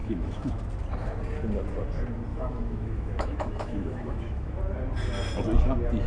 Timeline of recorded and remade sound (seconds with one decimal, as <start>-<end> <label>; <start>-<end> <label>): 0.0-0.6 remade; 0.6-2.3 recorded; 2.3-4.6 remade; 4.6-6.1 recorded